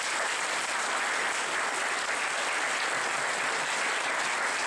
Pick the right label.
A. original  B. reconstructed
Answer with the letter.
A